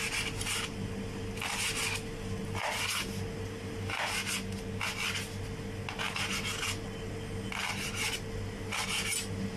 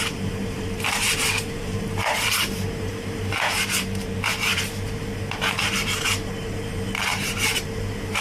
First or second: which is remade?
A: second